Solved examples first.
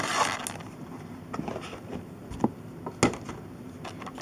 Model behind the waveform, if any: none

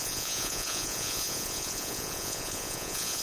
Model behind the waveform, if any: vocoder, Vocos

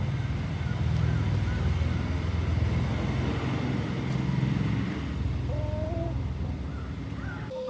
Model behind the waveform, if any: none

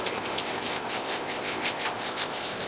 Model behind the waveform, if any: codec, ZipCodec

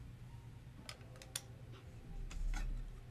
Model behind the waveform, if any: none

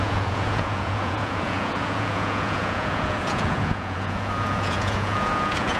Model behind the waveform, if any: vocoder, Vocos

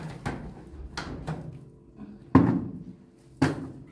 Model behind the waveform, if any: none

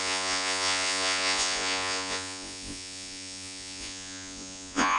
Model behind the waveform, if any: vocoder, Vocos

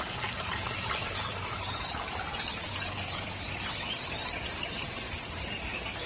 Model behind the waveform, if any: vocoder, BigVGAN v2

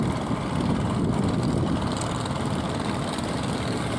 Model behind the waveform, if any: none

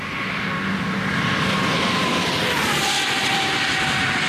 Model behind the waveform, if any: none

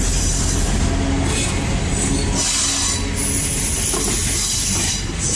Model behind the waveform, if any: none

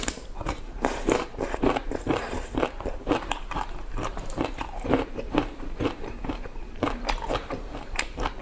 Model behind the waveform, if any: vocoder, BigVGAN v2